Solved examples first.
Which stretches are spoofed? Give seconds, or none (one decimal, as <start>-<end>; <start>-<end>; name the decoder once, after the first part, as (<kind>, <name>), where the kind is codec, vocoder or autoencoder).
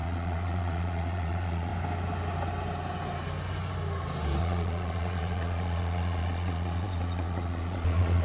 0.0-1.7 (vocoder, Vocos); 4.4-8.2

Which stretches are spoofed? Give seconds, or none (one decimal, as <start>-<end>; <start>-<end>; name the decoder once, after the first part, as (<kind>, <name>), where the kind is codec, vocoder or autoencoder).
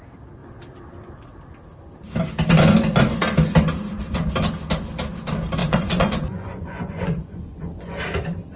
5.6-8.0 (vocoder, Vocos)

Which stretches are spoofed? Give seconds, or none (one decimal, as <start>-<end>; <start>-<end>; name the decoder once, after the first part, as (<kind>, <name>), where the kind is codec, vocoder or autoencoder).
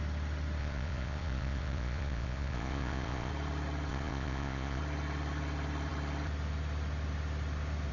0.6-3.3 (vocoder, Vocos); 3.9-4.8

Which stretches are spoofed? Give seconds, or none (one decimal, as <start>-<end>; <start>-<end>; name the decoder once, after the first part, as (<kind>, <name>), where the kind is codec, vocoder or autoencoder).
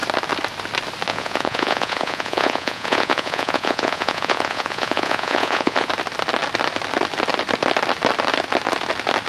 1.1-5.9 (vocoder, Vocos)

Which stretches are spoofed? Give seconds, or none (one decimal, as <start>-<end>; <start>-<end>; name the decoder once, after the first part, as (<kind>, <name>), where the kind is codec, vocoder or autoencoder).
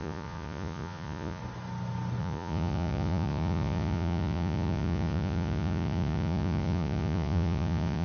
0.0-1.4 (vocoder, Vocos); 2.2-8.0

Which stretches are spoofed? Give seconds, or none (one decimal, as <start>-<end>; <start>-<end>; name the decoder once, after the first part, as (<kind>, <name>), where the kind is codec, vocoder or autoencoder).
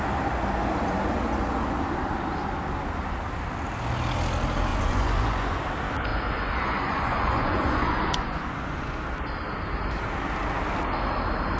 4.7-5.6 (vocoder, Vocos); 6.1-9.0